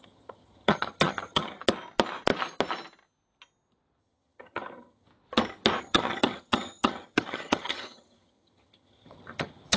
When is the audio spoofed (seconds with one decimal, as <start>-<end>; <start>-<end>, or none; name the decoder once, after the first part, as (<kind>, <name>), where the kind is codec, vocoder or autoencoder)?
0.0-1.6 (vocoder, HiFi-GAN); 4.0-5.1; 5.8-9.8